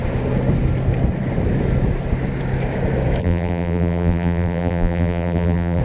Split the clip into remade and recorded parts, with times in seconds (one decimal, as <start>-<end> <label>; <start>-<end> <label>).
0.0-3.2 recorded; 3.2-5.8 remade